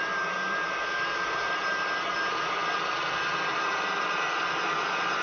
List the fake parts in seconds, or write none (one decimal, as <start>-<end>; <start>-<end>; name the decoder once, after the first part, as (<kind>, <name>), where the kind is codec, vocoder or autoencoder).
none

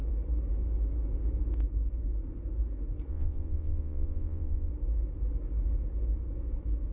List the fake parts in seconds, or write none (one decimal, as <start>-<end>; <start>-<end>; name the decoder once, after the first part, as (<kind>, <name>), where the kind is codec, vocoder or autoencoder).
3.1-4.7 (vocoder, Vocos)

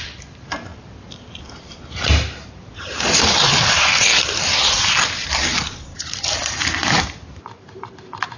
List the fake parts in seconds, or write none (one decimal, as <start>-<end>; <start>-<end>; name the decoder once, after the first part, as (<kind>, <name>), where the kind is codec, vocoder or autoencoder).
0.0-0.7 (vocoder, BigVGAN v2); 2.8-4.1; 7.4-8.4